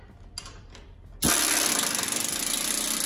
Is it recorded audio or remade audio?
recorded